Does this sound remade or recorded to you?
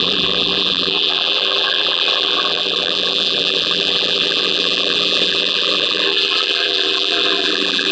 remade